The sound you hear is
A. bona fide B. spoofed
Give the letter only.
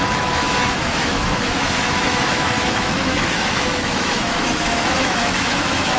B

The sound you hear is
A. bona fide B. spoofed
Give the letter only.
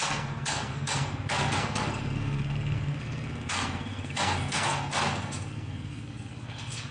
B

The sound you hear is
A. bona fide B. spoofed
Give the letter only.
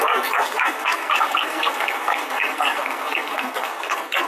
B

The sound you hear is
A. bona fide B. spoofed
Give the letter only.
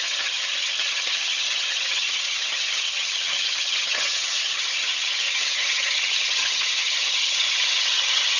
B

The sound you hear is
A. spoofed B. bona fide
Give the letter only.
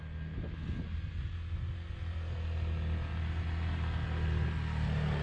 B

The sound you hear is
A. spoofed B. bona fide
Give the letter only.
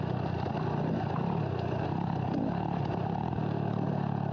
B